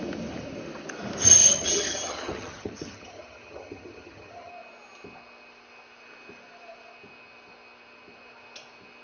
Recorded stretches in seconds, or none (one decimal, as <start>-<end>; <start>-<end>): 0.0-1.4; 4.5-9.0